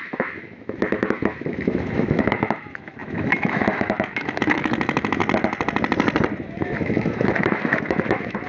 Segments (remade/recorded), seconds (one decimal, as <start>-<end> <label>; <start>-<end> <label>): 0.0-5.2 remade; 5.2-6.4 recorded; 6.4-8.5 remade